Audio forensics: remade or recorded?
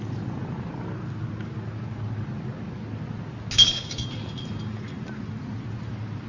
recorded